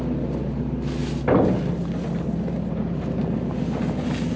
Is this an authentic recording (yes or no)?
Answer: yes